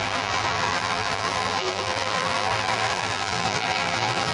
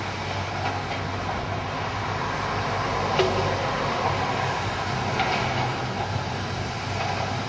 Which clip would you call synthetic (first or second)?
first